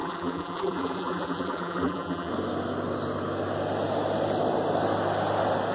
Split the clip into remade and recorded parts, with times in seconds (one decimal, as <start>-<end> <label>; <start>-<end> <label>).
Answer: 0.0-2.3 remade; 2.3-5.7 recorded